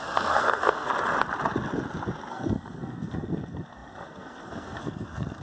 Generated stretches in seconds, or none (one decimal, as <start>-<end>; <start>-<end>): 0.0-0.9; 2.3-5.4